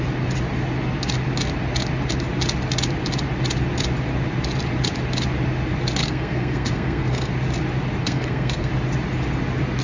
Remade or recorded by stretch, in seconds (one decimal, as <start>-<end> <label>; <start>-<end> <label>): 0.0-6.0 recorded; 6.0-7.3 remade; 7.3-8.0 recorded; 8.0-8.7 remade; 8.7-9.8 recorded